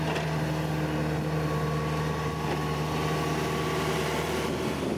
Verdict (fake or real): real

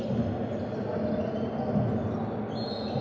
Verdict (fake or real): real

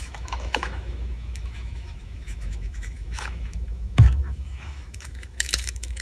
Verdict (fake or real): fake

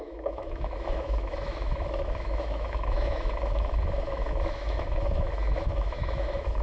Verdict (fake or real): fake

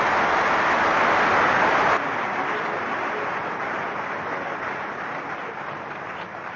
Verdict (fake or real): real